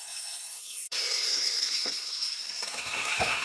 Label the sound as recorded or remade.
remade